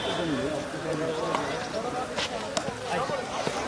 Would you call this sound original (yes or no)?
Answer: yes